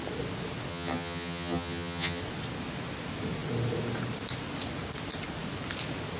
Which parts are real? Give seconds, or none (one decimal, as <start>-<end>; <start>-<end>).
0.0-0.7; 2.2-6.2

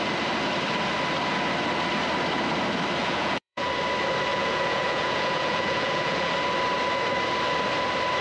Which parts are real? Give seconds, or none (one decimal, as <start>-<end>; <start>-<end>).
0.0-3.0; 3.7-4.3; 6.3-8.2

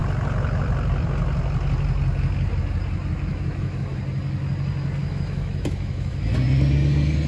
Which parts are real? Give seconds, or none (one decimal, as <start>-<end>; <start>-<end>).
0.0-3.3; 4.0-5.0; 6.2-7.3

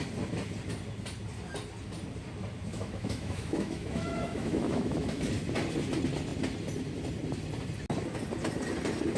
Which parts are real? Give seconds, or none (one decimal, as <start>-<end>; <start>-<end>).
0.0-2.7; 5.3-9.2

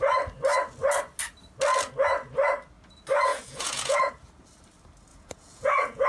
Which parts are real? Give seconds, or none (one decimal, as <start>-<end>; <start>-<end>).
0.0-3.3; 4.1-5.1